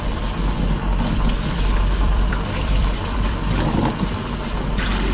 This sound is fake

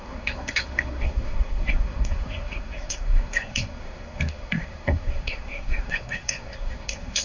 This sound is fake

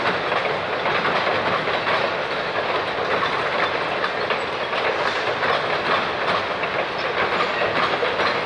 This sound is real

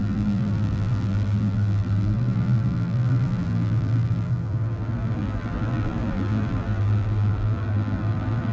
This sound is fake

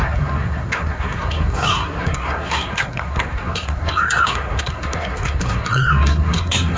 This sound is fake